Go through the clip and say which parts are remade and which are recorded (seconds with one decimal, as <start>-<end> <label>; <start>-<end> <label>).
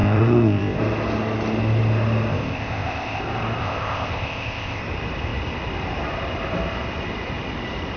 0.0-0.8 remade; 0.8-2.3 recorded; 2.3-3.2 remade; 3.2-3.6 recorded; 3.6-4.8 remade; 4.8-8.0 recorded